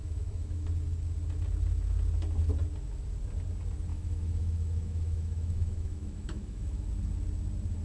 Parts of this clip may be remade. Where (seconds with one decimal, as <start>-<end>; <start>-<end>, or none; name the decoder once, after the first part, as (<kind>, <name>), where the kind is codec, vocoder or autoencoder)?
0.0-0.7 (autoencoder, DAC-VAE); 3.9-6.9